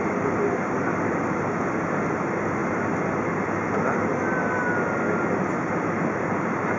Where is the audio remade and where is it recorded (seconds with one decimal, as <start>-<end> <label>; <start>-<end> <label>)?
0.0-6.8 recorded